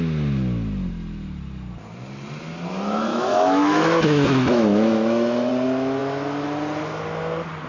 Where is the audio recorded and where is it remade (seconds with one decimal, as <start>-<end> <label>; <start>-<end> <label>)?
0.0-3.1 recorded; 3.1-5.5 remade; 5.5-7.7 recorded